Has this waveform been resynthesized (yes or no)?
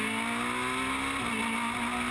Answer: no